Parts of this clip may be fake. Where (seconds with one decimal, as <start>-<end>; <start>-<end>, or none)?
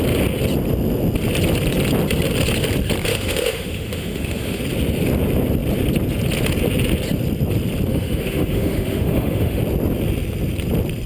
3.1-4.6; 7.9-9.6